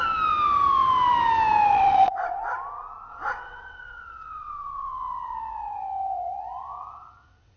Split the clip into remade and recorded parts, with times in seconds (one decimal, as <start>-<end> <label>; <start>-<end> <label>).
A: 0.0-1.7 recorded; 1.7-2.4 remade; 2.4-3.1 recorded; 3.1-7.6 remade